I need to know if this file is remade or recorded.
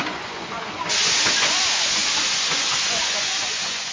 remade